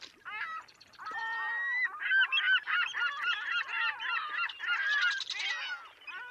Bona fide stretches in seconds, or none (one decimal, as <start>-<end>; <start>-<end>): 1.2-3.0; 3.7-5.4